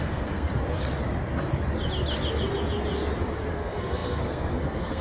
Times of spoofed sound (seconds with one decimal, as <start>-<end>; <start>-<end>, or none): 0.0-0.5; 3.5-5.0